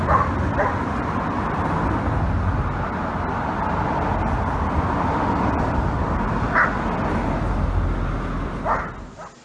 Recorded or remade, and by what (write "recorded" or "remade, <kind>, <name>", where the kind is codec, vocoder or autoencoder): recorded